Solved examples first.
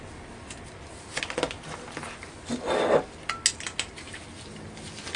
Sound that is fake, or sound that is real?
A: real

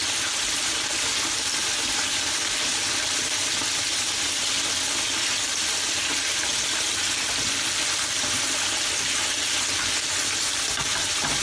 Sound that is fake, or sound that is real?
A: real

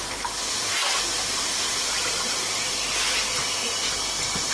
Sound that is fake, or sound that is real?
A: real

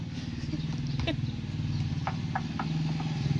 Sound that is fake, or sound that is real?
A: real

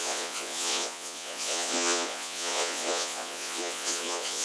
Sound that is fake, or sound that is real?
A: fake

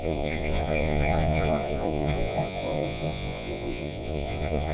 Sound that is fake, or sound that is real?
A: fake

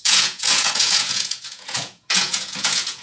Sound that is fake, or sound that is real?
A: fake